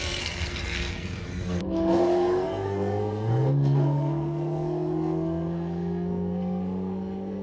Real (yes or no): no